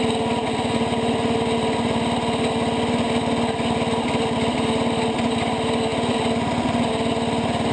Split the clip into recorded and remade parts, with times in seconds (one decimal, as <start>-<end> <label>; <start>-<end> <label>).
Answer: 0.0-7.7 recorded